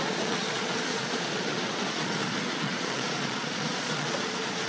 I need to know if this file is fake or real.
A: fake